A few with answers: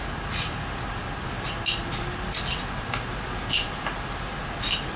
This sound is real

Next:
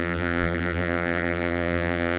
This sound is fake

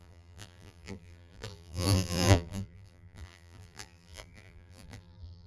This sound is fake